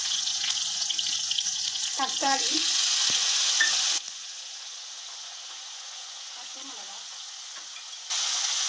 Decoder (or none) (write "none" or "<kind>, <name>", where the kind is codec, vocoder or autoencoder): vocoder, Vocos